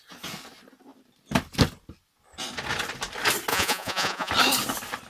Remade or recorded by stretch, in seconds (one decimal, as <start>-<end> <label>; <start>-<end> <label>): 0.0-3.5 recorded; 3.5-4.3 remade; 4.3-5.1 recorded